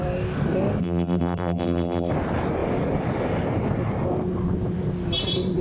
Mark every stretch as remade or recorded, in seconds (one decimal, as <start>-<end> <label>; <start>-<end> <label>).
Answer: 0.0-0.8 recorded; 0.8-2.1 remade; 2.1-5.6 recorded